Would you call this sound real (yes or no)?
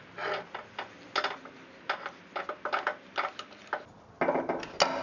yes